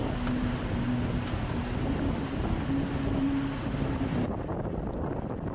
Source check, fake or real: real